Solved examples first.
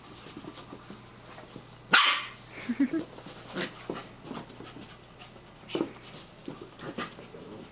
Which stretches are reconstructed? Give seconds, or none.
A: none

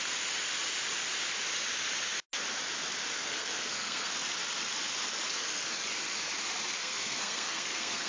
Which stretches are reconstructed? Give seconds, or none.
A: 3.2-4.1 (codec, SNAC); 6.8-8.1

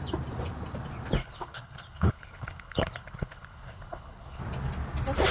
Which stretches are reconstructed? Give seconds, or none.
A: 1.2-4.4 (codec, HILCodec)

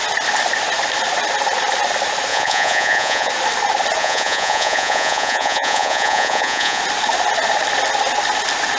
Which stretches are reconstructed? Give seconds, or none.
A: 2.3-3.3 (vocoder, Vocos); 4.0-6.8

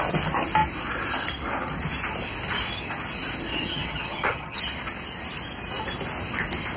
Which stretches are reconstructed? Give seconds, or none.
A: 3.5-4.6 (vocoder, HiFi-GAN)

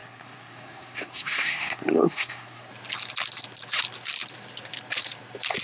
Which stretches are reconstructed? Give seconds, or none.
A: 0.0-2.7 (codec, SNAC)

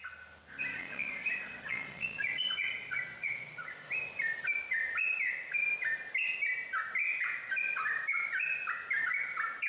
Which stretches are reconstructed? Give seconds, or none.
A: 0.7-3.9 (vocoder, Vocos)

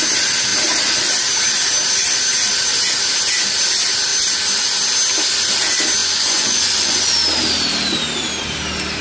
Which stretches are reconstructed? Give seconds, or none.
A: 6.0-7.1 (vocoder, Vocos)